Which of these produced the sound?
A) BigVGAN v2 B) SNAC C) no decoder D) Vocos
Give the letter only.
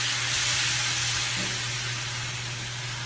C